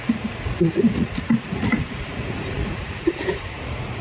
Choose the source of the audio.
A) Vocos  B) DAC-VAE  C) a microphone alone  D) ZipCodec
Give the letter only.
A